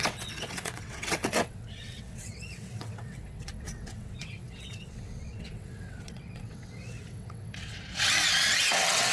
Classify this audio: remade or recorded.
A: remade